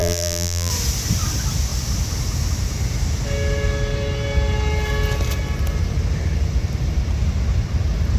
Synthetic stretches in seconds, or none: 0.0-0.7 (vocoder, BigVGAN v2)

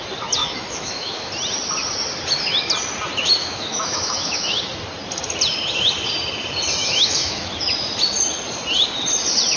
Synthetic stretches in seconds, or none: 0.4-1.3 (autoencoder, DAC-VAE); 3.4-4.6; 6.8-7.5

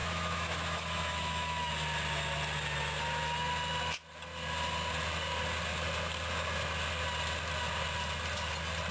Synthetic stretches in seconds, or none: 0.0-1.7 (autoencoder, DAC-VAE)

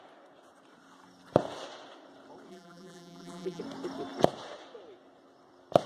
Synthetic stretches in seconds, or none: 2.5-3.6 (vocoder, BigVGAN v2)

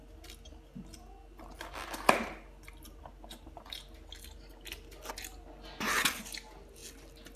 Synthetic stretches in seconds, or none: none